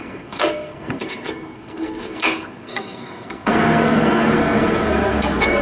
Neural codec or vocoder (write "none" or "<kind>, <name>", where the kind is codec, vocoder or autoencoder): codec, SNAC